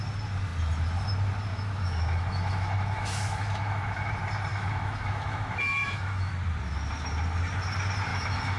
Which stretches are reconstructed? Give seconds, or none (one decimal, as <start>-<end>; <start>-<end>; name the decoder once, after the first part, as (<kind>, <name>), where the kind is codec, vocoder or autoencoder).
1.5-4.1 (autoencoder, DAC-VAE); 4.5-6.3; 8.1-8.6